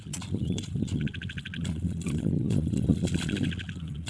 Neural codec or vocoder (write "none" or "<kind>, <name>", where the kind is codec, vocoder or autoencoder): vocoder, Vocos